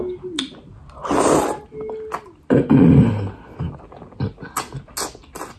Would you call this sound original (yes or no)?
yes